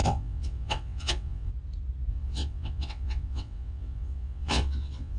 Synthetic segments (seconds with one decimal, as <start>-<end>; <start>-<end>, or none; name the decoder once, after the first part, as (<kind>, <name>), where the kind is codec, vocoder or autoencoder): 0.0-1.5 (vocoder, WaveNeXt); 2.1-5.2